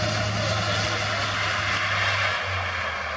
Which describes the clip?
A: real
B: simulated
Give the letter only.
A